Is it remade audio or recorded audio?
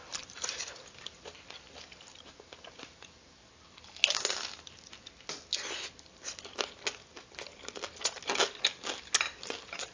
recorded